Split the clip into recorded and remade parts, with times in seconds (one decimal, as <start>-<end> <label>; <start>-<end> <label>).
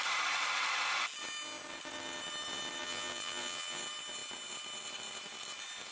0.0-2.8 recorded; 2.8-3.8 remade; 3.8-5.9 recorded